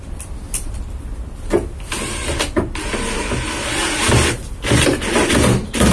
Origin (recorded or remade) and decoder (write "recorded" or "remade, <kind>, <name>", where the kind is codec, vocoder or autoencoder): recorded